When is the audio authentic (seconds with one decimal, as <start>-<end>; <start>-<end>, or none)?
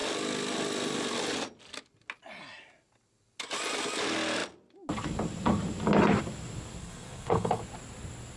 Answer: 0.0-6.8; 7.6-8.4